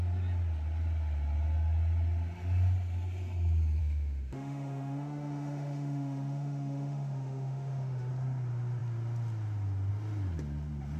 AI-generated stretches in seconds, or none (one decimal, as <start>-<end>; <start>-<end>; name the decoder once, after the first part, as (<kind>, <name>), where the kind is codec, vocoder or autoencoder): 3.8-8.1 (autoencoder, DAC-VAE)